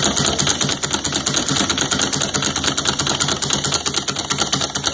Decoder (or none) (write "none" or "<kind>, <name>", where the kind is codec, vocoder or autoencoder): none